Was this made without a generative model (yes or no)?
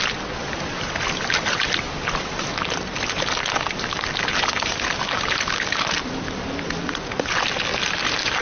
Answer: yes